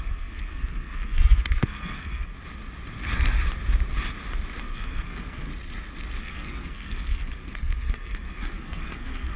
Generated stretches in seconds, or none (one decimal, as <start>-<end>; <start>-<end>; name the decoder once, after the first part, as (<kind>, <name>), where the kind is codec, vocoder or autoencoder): 0.0-2.3 (codec, SNAC); 4.6-5.5; 6.2-9.4